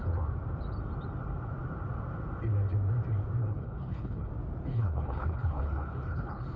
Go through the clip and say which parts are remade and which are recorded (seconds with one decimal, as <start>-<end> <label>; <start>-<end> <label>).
0.0-3.4 recorded; 3.4-4.3 remade; 4.3-4.7 recorded; 4.7-6.6 remade